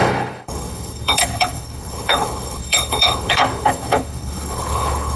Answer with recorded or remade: remade